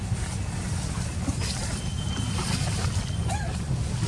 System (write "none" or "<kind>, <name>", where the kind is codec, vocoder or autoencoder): none